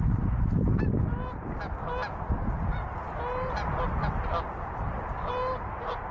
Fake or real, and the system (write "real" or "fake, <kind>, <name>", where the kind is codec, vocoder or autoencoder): real